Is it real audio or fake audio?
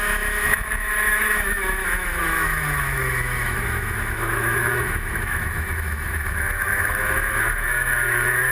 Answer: fake